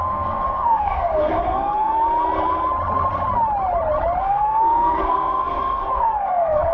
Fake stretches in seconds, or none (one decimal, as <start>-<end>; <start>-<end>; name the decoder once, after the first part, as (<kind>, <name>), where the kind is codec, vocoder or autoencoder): 0.0-1.9 (codec, SNAC); 4.2-6.7